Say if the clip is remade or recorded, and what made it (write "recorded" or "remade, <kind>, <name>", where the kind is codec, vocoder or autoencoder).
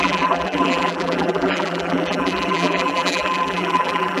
remade, vocoder, BigVGAN v2